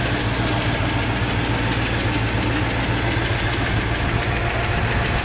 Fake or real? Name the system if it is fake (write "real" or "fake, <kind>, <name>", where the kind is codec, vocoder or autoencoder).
real